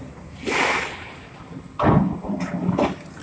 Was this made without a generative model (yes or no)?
yes